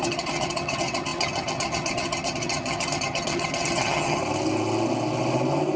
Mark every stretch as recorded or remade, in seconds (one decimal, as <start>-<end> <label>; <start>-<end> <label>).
0.0-4.2 remade; 4.2-5.8 recorded